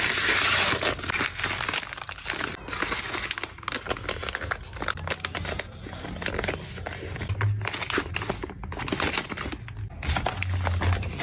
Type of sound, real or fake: real